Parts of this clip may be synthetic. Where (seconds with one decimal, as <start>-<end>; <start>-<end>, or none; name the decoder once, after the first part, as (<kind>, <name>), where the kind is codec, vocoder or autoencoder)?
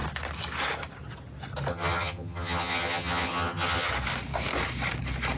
1.7-3.9 (vocoder, HiFi-GAN)